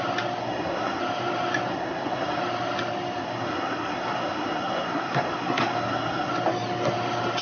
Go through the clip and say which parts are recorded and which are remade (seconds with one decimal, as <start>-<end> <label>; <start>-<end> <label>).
0.0-0.4 recorded; 0.4-1.0 remade; 1.0-1.7 recorded; 1.7-2.4 remade; 2.4-3.2 recorded; 3.2-6.3 remade; 6.3-7.4 recorded